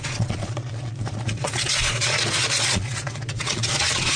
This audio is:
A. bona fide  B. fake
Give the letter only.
B